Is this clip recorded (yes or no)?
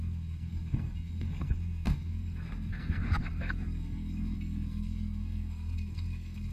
no